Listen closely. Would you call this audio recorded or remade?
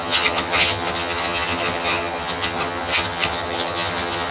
remade